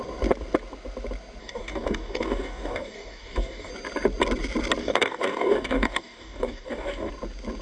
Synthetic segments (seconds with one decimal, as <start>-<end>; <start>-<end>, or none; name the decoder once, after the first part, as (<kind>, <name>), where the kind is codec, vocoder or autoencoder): 1.4-3.7 (codec, DAC); 4.8-7.1

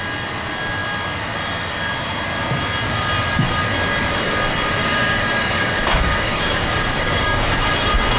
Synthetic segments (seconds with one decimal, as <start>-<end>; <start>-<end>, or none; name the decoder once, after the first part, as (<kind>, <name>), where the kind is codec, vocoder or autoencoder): 4.8-7.7 (codec, DAC)

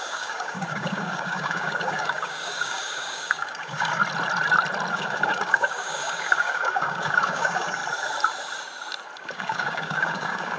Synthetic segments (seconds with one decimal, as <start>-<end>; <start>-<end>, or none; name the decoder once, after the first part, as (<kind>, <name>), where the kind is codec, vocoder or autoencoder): 0.0-4.0 (codec, DAC); 4.9-7.8; 9.2-10.6

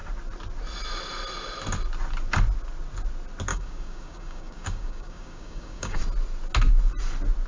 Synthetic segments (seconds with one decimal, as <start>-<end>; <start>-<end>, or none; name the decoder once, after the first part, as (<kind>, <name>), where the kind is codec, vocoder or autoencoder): 3.5-6.0 (codec, DAC)

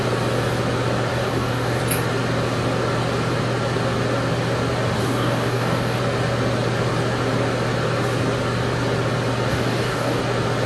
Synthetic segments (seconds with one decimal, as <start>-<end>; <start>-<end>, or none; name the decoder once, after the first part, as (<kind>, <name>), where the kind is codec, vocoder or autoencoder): 1.1-1.8 (codec, DAC); 5.0-6.0; 9.5-10.2

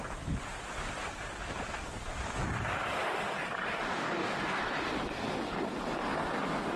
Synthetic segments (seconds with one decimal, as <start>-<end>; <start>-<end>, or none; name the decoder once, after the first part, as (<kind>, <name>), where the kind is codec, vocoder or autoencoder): 3.9-4.6 (codec, DAC)

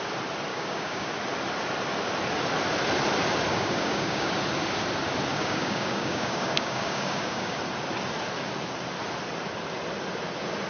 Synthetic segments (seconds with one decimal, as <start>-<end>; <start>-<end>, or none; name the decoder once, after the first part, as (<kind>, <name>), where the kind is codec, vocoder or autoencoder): 0.5-1.1 (codec, DAC); 3.5-4.3; 5.3-7.6